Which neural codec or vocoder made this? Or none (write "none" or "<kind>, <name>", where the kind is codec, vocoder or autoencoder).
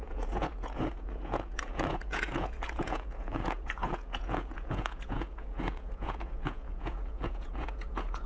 vocoder, Vocos